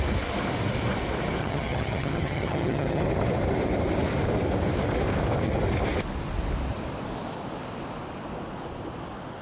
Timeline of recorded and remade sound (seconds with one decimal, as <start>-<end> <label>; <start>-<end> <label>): 0.0-1.4 recorded; 1.4-3.0 remade; 3.0-9.4 recorded